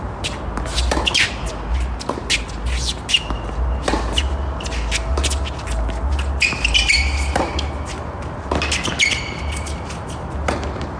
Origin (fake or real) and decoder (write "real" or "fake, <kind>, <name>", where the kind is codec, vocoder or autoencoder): real